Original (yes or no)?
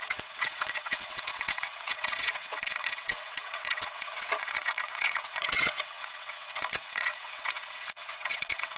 no